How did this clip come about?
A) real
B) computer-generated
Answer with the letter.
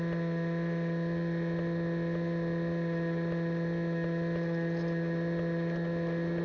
A